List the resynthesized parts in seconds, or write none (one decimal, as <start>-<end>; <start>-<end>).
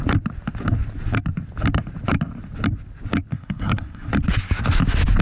3.3-4.1